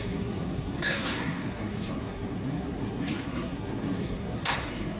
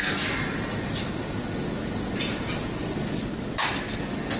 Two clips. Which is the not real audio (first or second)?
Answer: first